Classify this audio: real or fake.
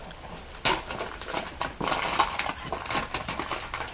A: real